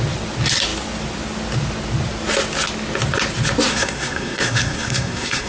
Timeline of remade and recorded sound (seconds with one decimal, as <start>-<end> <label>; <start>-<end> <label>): 0.0-3.7 recorded; 3.7-5.5 remade